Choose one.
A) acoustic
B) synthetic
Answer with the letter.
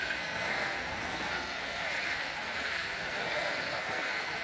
B